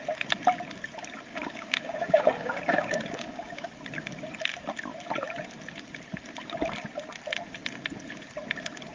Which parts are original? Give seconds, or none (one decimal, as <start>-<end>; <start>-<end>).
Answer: 0.0-1.3; 3.7-8.9

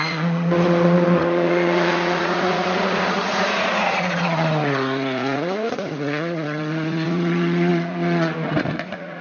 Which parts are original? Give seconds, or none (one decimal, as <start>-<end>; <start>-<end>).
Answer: none